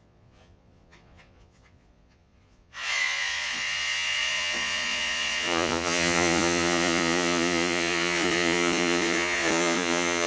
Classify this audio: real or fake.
fake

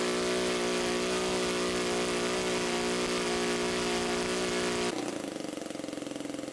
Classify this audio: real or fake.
real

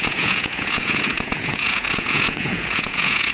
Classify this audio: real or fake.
fake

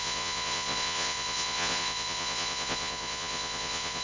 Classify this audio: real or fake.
fake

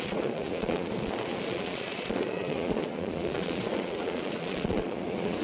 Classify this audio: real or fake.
fake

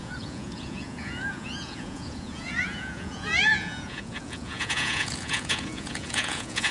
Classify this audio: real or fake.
fake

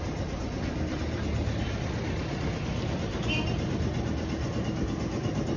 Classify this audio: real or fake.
real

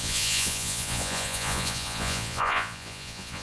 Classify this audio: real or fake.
fake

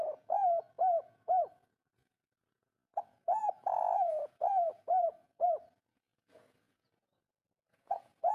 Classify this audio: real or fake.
fake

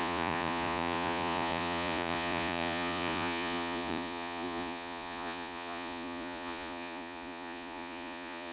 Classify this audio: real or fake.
fake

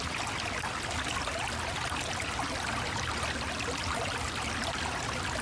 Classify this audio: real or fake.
real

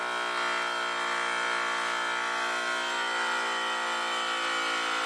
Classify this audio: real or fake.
real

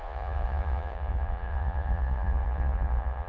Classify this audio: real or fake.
fake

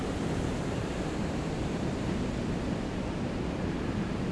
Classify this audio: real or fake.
real